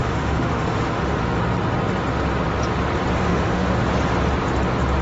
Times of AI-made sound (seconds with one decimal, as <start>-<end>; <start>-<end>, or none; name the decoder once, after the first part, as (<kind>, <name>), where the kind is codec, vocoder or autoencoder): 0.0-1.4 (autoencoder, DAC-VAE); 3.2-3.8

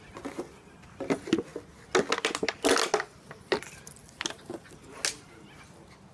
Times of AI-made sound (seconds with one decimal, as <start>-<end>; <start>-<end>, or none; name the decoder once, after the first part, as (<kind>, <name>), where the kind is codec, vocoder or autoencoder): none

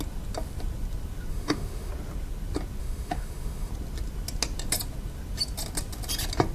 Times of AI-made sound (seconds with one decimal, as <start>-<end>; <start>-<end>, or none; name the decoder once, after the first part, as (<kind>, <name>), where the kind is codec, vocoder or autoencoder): 1.3-1.9 (autoencoder, DAC-VAE); 2.8-3.7

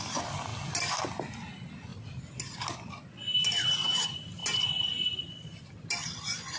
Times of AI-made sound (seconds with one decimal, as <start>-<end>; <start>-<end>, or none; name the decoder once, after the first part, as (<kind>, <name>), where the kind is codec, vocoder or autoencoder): none

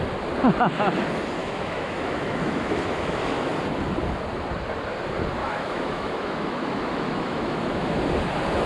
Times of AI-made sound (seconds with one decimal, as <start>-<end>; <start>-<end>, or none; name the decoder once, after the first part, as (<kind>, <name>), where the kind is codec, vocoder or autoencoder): 1.4-3.5 (autoencoder, DAC-VAE); 5.4-8.0

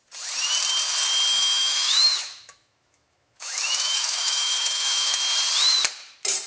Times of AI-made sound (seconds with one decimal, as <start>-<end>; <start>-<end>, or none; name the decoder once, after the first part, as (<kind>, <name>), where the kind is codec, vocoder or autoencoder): 1.3-5.2 (autoencoder, DAC-VAE)

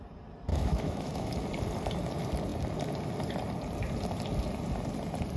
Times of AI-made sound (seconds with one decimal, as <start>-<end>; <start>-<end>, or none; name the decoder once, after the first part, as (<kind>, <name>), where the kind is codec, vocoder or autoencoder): 0.5-1.3 (autoencoder, DAC-VAE)